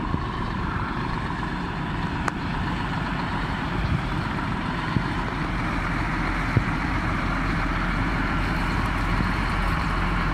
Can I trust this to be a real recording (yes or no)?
no